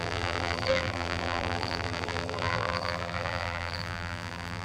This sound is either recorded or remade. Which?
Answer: remade